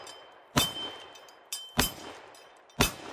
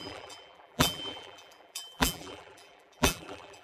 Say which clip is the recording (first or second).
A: first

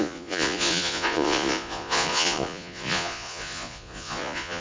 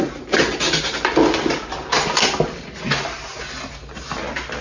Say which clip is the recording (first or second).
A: second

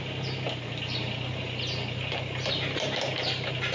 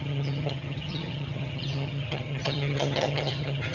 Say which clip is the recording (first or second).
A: first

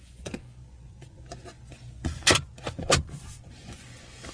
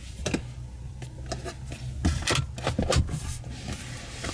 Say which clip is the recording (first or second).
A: second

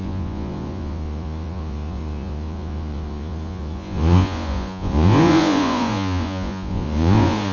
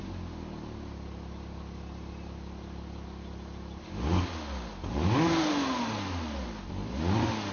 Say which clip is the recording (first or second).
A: second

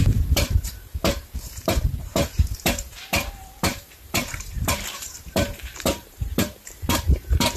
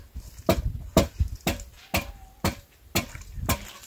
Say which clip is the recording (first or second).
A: second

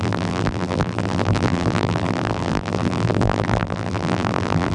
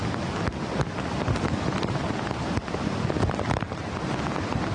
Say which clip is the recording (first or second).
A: second